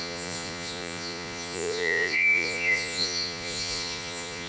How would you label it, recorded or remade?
remade